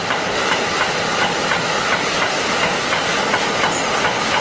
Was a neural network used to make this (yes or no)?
no